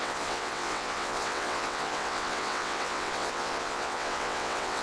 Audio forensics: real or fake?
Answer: fake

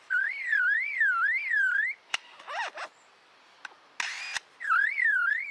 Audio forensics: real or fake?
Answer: real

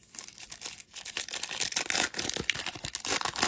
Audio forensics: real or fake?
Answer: real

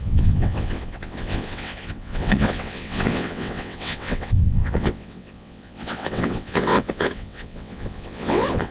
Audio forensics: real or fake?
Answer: fake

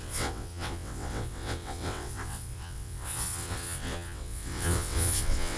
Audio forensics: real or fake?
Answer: fake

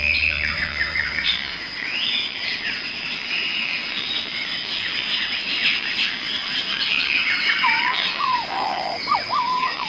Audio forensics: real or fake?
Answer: fake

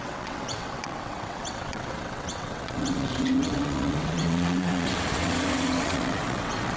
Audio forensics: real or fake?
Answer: fake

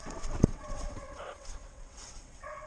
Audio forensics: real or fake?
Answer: fake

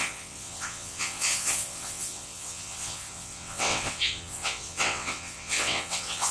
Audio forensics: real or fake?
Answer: fake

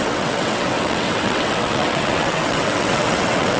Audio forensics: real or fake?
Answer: fake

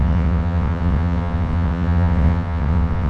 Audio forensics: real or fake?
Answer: fake